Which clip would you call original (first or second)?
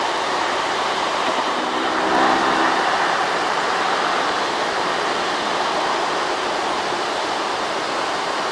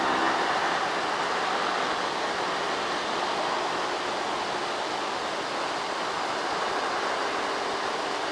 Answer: second